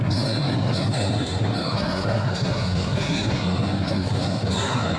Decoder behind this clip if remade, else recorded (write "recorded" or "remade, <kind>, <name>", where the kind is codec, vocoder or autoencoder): remade, codec, SNAC